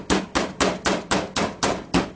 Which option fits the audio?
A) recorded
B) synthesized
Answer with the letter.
A